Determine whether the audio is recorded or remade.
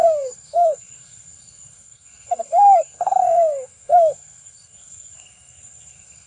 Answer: remade